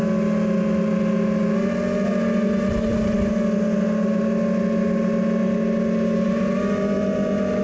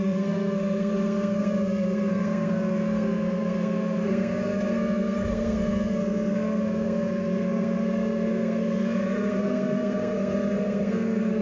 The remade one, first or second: second